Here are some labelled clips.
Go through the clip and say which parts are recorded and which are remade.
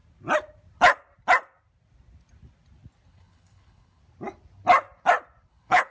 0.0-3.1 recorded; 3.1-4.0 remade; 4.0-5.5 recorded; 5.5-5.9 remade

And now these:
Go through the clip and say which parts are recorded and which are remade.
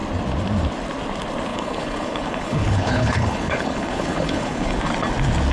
0.0-1.5 recorded; 1.5-4.8 remade; 4.8-5.5 recorded